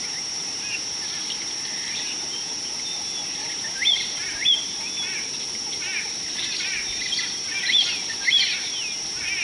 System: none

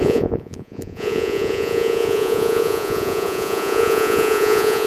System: vocoder, Vocos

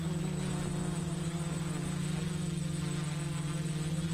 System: none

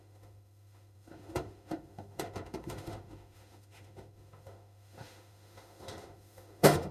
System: autoencoder, DAC-VAE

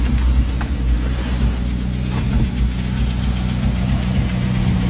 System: none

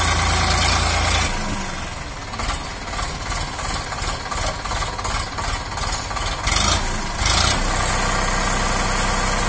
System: none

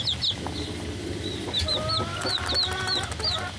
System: none